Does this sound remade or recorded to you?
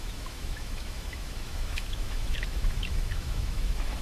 remade